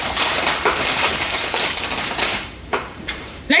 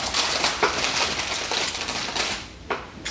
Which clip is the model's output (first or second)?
first